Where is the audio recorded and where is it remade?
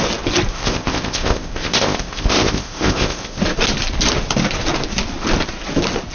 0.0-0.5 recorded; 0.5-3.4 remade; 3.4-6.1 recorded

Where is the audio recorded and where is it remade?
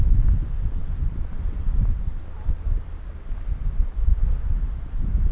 0.0-5.3 recorded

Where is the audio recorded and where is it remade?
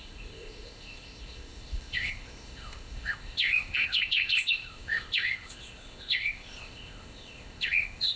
0.0-8.2 remade